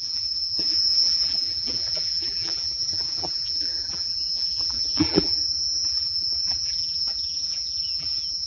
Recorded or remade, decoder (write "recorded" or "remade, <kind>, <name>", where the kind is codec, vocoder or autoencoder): remade, vocoder, BigVGAN v2